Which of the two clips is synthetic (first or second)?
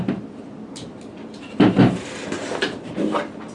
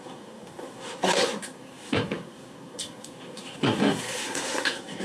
second